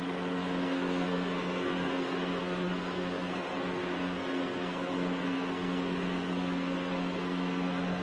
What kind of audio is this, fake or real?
fake